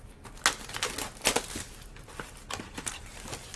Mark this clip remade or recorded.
recorded